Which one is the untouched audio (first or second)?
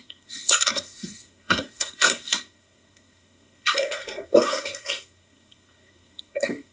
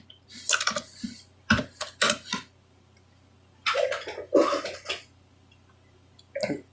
second